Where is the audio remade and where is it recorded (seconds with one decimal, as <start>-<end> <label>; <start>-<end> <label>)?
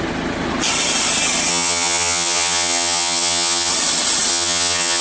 0.0-1.5 recorded; 1.5-3.7 remade; 3.7-4.3 recorded; 4.3-5.0 remade